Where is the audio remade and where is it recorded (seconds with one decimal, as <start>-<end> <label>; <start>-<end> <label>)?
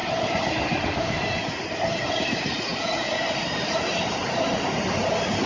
0.0-1.4 remade; 1.4-5.5 recorded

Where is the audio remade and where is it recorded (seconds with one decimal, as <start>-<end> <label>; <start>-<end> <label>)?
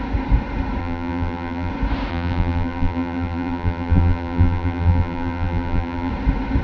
0.0-0.8 recorded; 0.8-1.7 remade; 1.7-2.1 recorded; 2.1-6.1 remade; 6.1-6.6 recorded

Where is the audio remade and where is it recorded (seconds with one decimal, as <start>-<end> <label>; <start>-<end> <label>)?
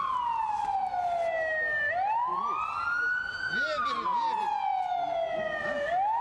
0.0-6.2 recorded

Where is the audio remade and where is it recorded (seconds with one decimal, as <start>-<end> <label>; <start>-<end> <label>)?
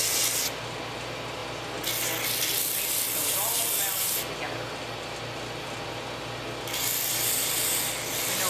0.0-8.5 recorded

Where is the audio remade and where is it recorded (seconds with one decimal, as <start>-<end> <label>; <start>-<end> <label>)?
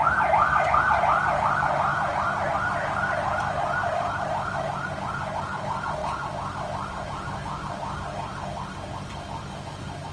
0.0-10.1 recorded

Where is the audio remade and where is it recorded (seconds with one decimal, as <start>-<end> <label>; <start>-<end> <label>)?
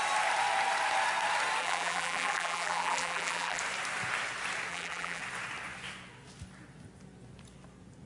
0.0-1.6 recorded; 1.6-3.6 remade; 3.6-4.7 recorded; 4.7-5.2 remade; 5.2-8.1 recorded